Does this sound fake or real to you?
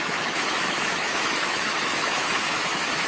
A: fake